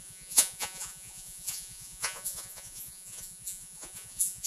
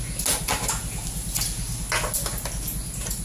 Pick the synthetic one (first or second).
first